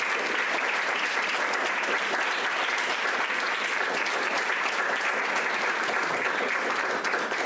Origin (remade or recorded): recorded